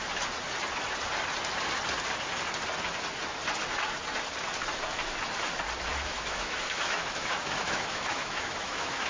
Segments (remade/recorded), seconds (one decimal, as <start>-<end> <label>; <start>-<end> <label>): 0.0-5.9 recorded; 5.9-9.1 remade